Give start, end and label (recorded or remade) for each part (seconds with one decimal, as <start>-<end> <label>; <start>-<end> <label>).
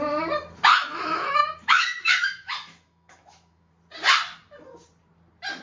0.0-0.7 recorded; 0.7-3.7 remade; 3.7-5.6 recorded